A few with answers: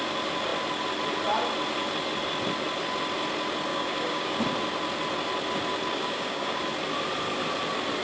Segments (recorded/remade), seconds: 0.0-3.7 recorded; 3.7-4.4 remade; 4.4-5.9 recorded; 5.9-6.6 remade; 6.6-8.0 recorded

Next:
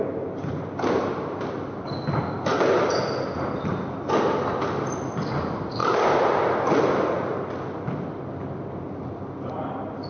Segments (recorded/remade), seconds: 0.0-10.1 recorded

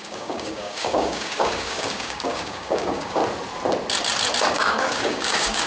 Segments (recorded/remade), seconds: 0.0-3.2 remade; 3.2-4.5 recorded; 4.5-5.7 remade

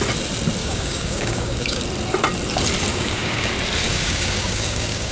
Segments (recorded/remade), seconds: 0.0-0.6 recorded; 0.6-1.8 remade; 1.8-2.9 recorded; 2.9-3.5 remade; 3.5-3.9 recorded; 3.9-5.1 remade

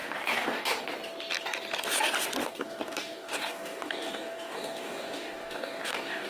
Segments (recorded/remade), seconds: 0.0-0.8 remade; 0.8-2.4 recorded; 2.4-6.3 remade

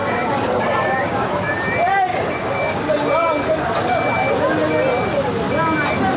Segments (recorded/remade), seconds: 0.0-1.3 remade; 1.3-2.1 recorded; 2.1-2.8 remade; 2.8-6.2 recorded

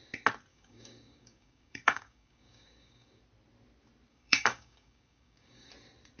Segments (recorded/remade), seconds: 0.0-0.5 recorded; 0.5-3.2 remade; 3.2-4.1 recorded; 4.1-5.7 remade; 5.7-6.2 recorded

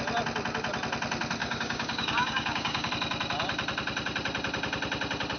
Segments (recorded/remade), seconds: 0.0-1.4 recorded; 1.4-2.9 remade; 2.9-5.4 recorded